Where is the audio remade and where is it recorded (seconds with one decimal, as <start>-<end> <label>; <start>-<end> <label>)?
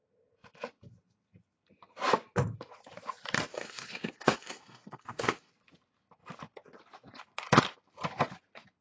0.0-3.5 recorded; 3.5-5.5 remade; 5.5-8.8 recorded